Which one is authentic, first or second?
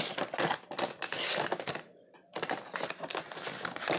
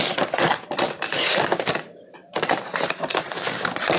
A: first